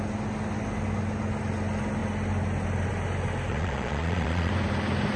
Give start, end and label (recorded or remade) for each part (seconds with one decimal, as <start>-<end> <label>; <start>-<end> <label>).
0.0-3.5 recorded; 3.5-4.5 remade; 4.5-5.2 recorded